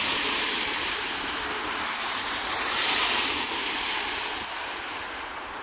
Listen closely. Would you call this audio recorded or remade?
remade